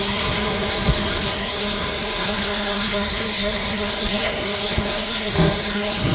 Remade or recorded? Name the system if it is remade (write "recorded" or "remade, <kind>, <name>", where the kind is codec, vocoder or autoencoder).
remade, codec, SNAC